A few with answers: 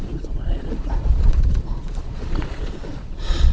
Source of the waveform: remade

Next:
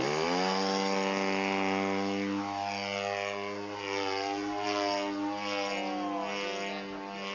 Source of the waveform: recorded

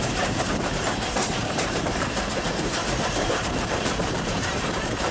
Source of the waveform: remade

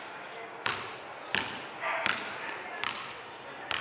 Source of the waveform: recorded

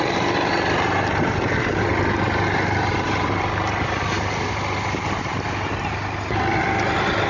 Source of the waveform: recorded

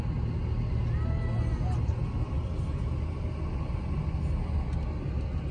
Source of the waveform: recorded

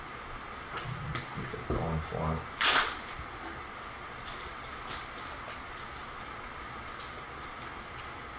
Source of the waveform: recorded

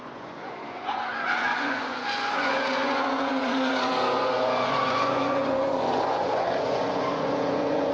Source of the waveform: remade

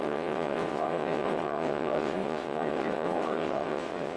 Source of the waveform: remade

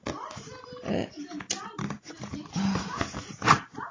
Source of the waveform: recorded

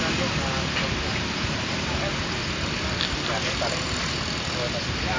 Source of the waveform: recorded